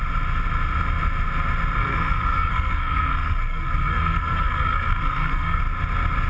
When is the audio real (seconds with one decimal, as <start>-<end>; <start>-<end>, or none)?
0.0-1.8; 5.6-6.3